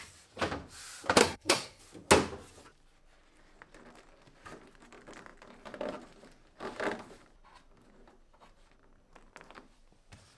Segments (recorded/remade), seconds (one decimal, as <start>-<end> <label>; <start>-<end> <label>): 0.0-1.2 recorded; 1.2-1.8 remade; 1.8-10.4 recorded